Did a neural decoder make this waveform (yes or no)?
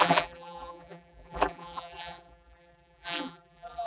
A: yes